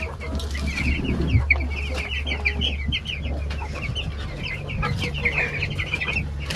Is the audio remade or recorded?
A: recorded